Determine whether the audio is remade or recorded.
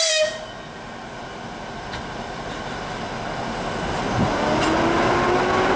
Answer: recorded